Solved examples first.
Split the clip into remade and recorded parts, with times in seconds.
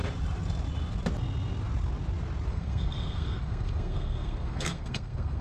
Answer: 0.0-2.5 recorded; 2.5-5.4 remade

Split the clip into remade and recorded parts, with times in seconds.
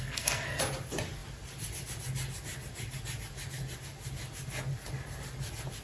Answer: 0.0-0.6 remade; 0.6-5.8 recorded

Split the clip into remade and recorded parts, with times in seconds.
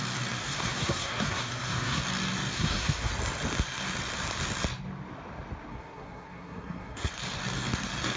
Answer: 0.0-0.4 recorded; 0.4-2.0 remade; 2.0-2.5 recorded; 2.5-3.1 remade; 3.1-5.7 recorded; 5.7-7.1 remade; 7.1-8.2 recorded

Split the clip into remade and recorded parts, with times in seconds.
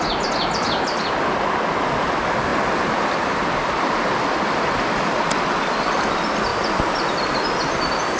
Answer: 0.0-8.2 recorded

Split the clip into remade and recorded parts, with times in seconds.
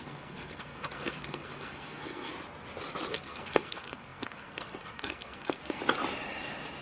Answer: 0.0-2.3 remade; 2.3-3.1 recorded; 3.1-5.8 remade; 5.8-6.8 recorded